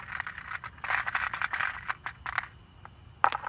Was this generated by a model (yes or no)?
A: no